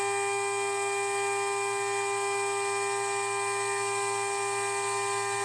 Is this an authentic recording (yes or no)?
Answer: yes